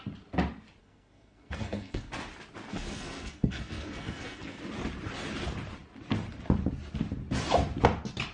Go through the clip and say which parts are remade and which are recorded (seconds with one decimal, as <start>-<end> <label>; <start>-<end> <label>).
0.0-0.8 recorded; 0.8-2.1 remade; 2.1-2.7 recorded; 2.7-4.6 remade; 4.6-8.3 recorded